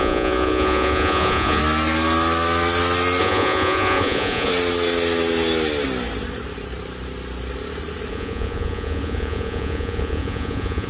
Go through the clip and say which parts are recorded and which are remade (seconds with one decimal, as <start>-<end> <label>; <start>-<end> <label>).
0.0-1.6 remade; 1.6-3.2 recorded; 3.2-4.5 remade; 4.5-8.1 recorded; 8.1-10.9 remade